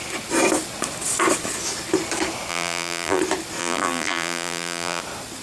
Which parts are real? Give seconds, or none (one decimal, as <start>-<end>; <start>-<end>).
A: 0.0-2.5; 3.2-3.6; 5.0-5.4